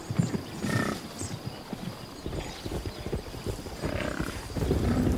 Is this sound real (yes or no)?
yes